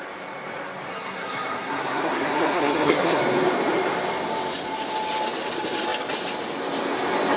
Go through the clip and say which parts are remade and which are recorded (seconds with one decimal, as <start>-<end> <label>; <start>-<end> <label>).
0.0-0.9 recorded; 0.9-3.2 remade; 3.2-7.4 recorded